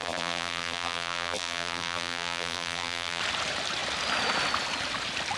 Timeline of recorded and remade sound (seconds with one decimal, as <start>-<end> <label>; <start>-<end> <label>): 0.0-3.2 remade; 3.2-5.4 recorded